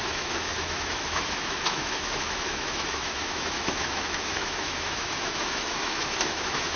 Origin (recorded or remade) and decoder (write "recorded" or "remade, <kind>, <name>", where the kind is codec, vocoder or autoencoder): remade, autoencoder, DAC-VAE